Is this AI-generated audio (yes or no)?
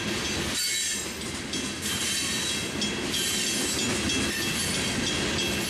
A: no